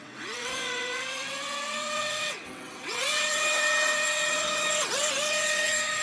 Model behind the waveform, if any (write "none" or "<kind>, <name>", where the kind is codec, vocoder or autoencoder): vocoder, WaveNeXt